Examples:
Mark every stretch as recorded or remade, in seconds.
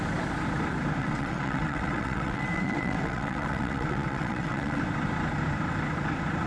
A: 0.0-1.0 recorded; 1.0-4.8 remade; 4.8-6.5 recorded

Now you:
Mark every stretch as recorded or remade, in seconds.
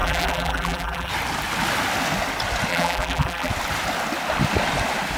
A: 0.0-1.1 remade; 1.1-2.7 recorded; 2.7-3.5 remade; 3.5-5.2 recorded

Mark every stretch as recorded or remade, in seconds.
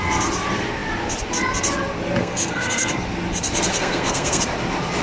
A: 0.0-2.2 recorded; 2.2-2.9 remade; 2.9-3.7 recorded; 3.7-4.4 remade; 4.4-5.0 recorded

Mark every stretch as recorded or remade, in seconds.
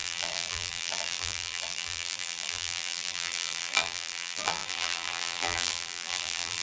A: 0.0-6.6 remade